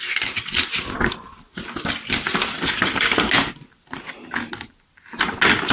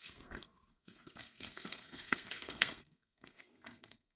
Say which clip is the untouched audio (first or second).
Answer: first